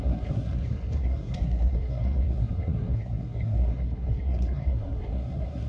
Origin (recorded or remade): remade